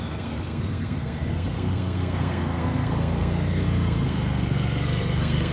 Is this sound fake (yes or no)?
yes